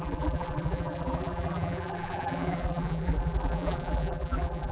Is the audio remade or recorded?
remade